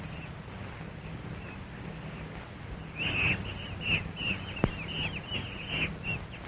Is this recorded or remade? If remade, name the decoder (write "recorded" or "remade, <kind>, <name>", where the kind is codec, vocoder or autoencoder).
recorded